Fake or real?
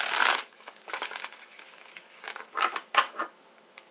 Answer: fake